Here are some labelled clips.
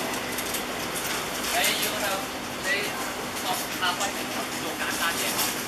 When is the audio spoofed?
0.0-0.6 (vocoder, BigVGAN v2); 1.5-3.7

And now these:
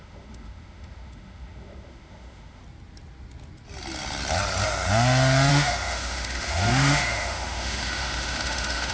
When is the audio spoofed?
0.0-2.6 (autoencoder, DAC-VAE); 5.5-8.9

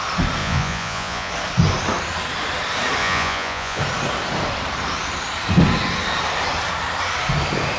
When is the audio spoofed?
0.4-1.3 (vocoder, Vocos); 3.0-3.8

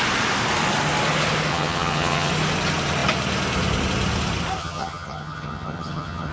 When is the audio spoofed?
1.5-2.3 (vocoder, HiFi-GAN); 4.6-6.3

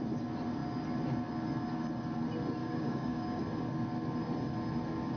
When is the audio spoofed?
2.6-3.4 (codec, DAC)